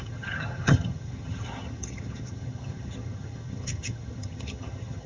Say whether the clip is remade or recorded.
remade